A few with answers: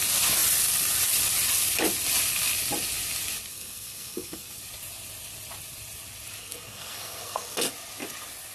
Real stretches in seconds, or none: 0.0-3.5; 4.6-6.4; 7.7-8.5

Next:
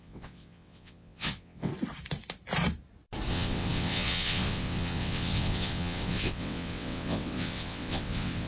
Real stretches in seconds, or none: 1.7-3.3

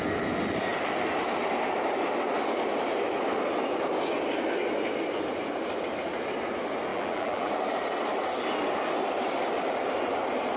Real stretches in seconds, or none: 0.0-6.9; 7.5-10.6

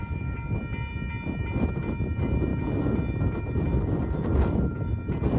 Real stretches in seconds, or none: 0.0-5.4

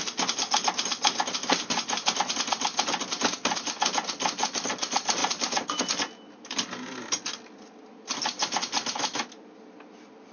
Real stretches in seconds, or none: 0.0-5.2; 5.8-10.3

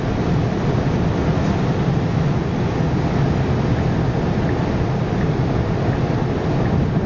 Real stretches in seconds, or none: 0.0-7.1